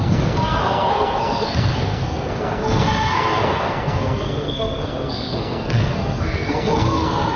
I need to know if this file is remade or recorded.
remade